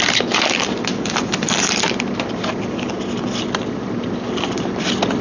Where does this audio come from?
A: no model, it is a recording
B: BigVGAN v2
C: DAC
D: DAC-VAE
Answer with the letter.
B